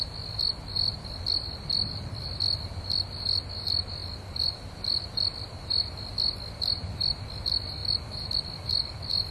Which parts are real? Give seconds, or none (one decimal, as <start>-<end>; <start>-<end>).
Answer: 0.0-9.3